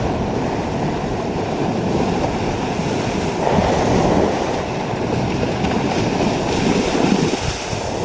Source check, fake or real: real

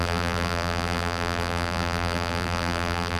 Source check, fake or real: fake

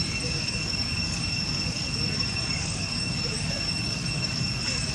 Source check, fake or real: fake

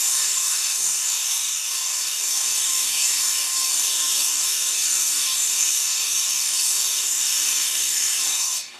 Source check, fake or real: fake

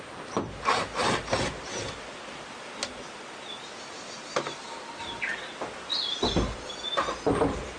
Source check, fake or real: real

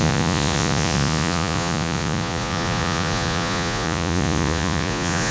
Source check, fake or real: fake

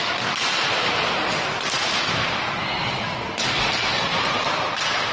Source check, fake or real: real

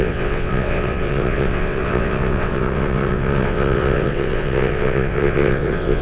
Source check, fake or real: fake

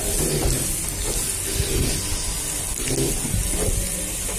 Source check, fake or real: real